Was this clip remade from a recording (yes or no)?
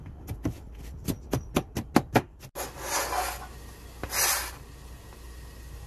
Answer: no